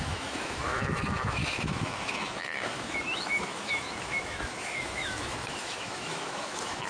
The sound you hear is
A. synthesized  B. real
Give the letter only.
A